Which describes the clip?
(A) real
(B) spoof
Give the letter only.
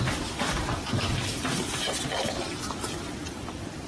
B